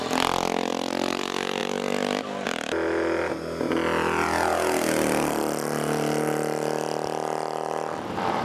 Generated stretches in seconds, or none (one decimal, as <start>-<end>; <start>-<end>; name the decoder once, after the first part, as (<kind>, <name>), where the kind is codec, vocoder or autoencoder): 0.7-1.2 (vocoder, BigVGAN v2); 1.6-3.3

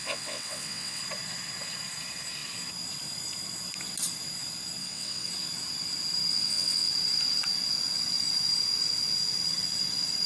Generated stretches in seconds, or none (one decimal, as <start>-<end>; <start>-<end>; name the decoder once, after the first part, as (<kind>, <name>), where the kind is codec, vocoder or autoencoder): 0.0-1.0 (vocoder, WaveNeXt); 4.8-5.3; 6.3-6.9

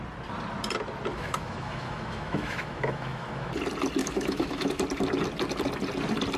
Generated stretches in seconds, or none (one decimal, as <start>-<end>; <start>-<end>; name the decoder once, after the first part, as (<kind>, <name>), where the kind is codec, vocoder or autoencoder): 1.1-3.5 (autoencoder, DAC-VAE); 4.0-4.8